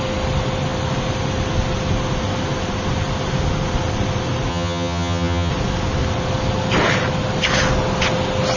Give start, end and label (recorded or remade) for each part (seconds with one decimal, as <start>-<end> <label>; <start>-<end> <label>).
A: 0.0-4.5 recorded; 4.5-5.5 remade; 5.5-8.6 recorded